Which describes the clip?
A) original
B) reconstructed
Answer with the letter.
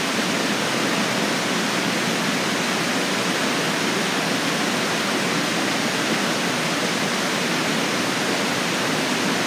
A